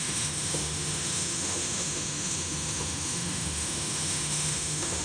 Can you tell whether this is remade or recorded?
remade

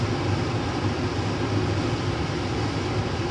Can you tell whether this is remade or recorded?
recorded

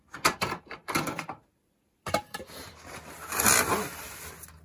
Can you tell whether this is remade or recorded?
recorded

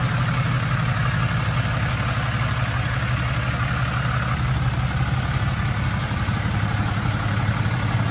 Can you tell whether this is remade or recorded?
recorded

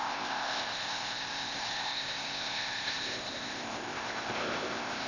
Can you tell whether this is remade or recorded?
remade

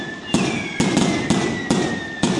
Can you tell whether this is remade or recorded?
recorded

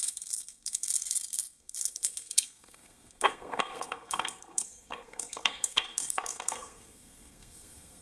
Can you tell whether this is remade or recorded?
remade